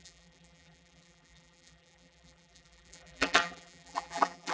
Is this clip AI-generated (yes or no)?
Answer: yes